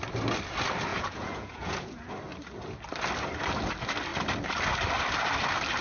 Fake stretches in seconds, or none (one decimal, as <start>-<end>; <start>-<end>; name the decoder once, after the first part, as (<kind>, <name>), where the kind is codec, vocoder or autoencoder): 0.9-2.1 (vocoder, Vocos)